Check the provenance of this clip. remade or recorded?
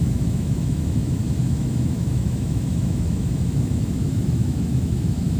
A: remade